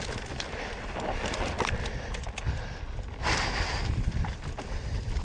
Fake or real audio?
real